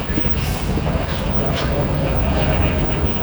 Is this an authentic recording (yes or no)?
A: no